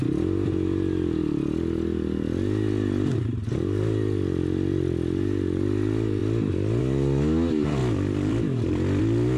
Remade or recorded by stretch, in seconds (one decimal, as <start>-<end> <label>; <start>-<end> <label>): 0.0-7.8 recorded; 7.8-9.0 remade; 9.0-9.4 recorded